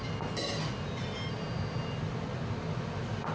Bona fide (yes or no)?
yes